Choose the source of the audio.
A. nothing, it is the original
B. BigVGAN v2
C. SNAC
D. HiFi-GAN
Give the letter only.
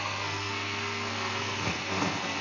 C